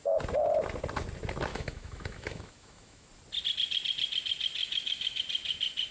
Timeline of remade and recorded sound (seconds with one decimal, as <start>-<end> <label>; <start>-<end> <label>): 0.0-1.5 recorded; 1.5-3.1 remade; 3.1-4.6 recorded; 4.6-5.2 remade; 5.2-5.9 recorded